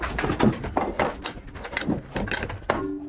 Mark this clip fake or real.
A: real